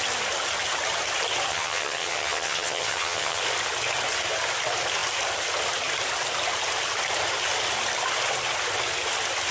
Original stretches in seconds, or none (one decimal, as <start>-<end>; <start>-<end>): 0.0-1.5; 3.4-9.5